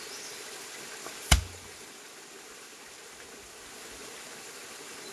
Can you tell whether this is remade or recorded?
recorded